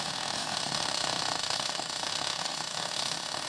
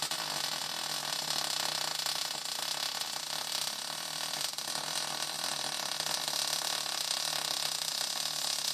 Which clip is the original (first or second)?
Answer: second